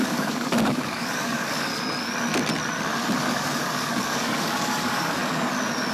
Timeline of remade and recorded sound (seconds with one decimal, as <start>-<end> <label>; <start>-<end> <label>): 0.0-1.7 remade; 1.7-3.2 recorded; 3.2-5.2 remade; 5.2-5.9 recorded